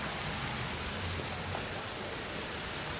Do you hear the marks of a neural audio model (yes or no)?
no